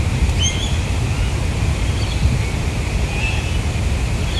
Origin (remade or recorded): recorded